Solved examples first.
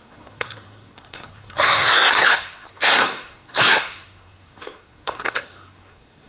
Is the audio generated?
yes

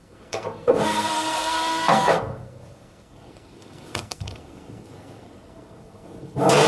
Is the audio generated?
yes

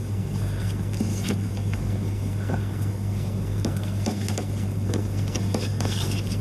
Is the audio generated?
yes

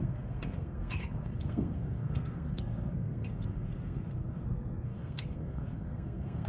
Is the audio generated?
yes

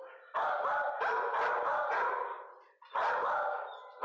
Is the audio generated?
no